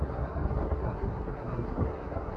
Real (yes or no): no